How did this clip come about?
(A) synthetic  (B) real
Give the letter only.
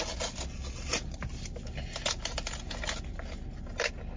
B